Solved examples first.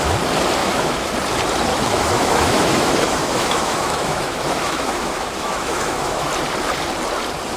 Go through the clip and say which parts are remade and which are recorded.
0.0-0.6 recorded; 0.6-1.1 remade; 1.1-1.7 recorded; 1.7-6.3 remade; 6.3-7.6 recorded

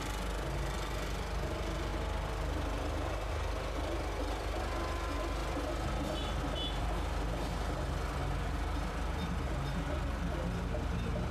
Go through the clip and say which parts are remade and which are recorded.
0.0-11.3 recorded

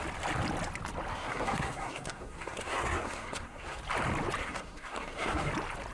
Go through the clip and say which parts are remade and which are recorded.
0.0-1.1 recorded; 1.1-3.8 remade; 3.8-4.4 recorded; 4.4-5.5 remade; 5.5-5.9 recorded

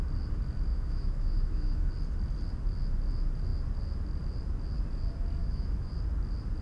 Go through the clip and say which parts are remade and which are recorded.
0.0-0.7 recorded; 0.7-1.9 remade; 1.9-5.4 recorded; 5.4-5.9 remade; 5.9-6.6 recorded